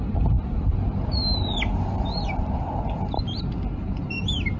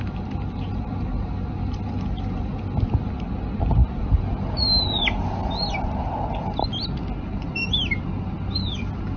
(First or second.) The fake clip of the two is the first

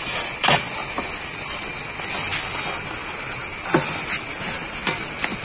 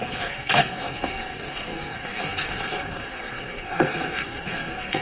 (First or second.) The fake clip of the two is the second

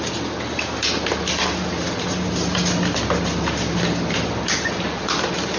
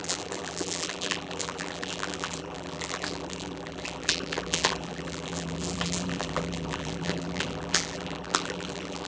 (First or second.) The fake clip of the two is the second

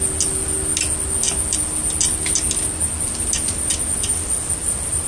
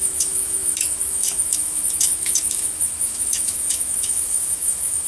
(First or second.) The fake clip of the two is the second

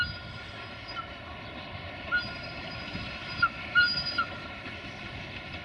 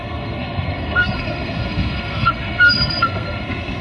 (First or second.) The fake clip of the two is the second